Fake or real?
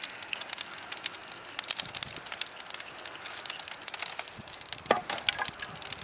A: real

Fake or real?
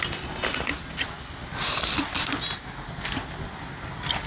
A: real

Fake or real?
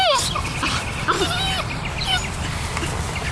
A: real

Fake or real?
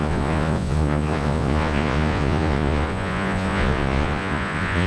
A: fake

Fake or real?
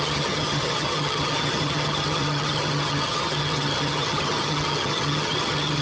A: fake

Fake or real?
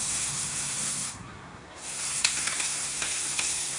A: fake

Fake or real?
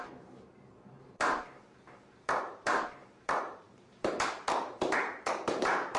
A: fake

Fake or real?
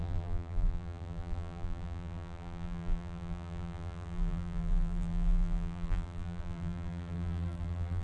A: fake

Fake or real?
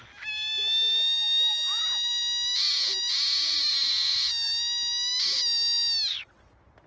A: real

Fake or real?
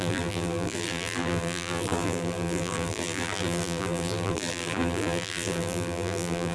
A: fake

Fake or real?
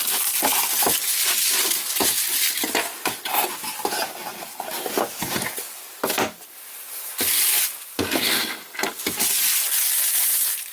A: real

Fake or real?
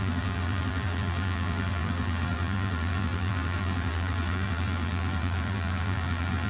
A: fake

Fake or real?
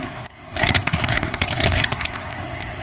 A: fake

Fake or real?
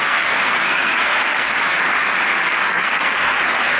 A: fake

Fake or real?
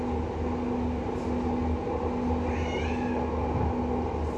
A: real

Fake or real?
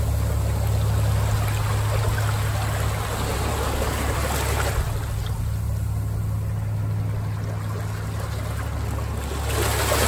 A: real